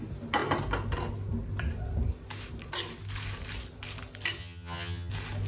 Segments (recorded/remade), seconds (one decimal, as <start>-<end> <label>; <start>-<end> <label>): 0.0-4.4 recorded; 4.4-5.1 remade; 5.1-5.5 recorded